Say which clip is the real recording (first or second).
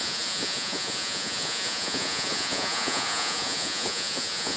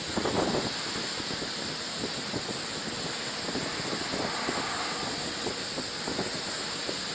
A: second